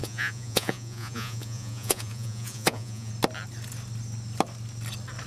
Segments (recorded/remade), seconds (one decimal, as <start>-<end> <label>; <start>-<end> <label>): 0.0-3.1 remade; 3.1-5.3 recorded